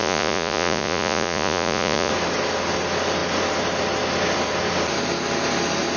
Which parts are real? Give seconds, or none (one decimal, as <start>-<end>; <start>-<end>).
2.1-6.0